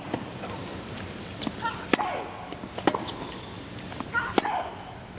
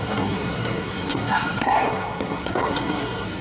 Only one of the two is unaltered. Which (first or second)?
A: first